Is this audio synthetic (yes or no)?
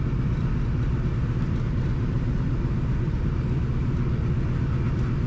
no